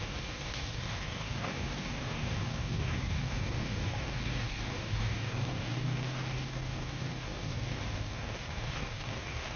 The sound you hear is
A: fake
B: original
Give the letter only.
A